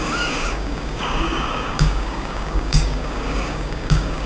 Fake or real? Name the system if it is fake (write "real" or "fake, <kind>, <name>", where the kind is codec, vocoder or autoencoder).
fake, codec, DAC